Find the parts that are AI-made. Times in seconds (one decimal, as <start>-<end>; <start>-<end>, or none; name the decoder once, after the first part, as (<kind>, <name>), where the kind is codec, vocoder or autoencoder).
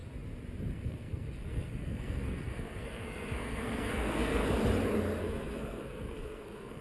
0.7-4.4 (codec, SNAC); 5.2-6.8